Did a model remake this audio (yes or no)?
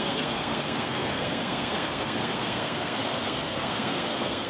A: yes